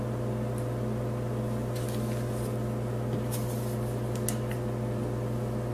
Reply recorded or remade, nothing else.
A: recorded